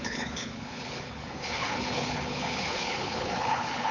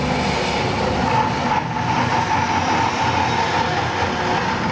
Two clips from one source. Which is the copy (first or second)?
first